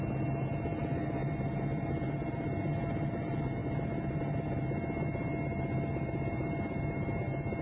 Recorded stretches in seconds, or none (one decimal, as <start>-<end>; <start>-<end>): 0.0-7.6